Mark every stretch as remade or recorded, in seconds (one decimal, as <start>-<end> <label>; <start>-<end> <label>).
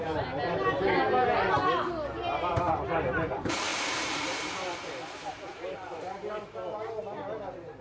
0.0-3.7 recorded; 3.7-4.3 remade; 4.3-5.5 recorded; 5.5-6.3 remade; 6.3-7.8 recorded